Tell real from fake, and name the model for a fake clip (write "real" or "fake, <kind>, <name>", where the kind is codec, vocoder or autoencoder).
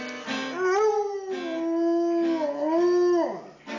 real